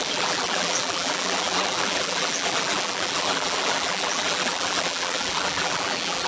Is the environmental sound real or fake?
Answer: fake